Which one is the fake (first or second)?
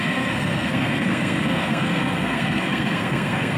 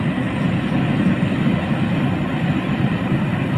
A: first